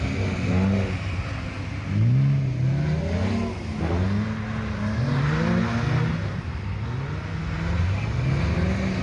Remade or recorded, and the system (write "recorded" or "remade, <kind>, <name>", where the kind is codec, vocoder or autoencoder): recorded